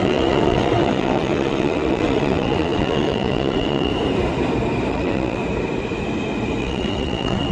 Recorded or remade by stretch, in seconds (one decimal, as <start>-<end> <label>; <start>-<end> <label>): 0.0-3.9 remade; 3.9-4.9 recorded; 4.9-5.4 remade; 5.4-6.6 recorded; 6.6-7.5 remade